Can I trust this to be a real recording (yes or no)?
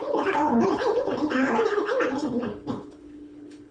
no